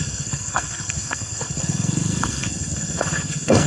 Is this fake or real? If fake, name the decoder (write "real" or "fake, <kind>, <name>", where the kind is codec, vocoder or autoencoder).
fake, codec, SNAC